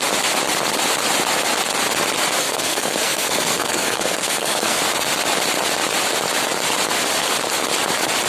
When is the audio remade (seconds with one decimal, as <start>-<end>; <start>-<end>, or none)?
2.4-4.8